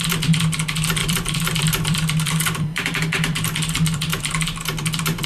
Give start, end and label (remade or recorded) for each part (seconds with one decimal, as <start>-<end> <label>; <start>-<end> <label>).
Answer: 0.0-1.0 recorded; 1.0-4.2 remade; 4.2-5.3 recorded